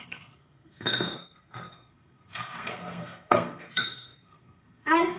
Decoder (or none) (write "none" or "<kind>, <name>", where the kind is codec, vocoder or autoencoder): codec, SNAC